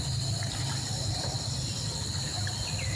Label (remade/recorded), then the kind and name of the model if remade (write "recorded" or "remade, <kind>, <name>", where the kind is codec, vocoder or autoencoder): recorded